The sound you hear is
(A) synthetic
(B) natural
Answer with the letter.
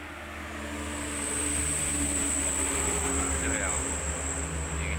B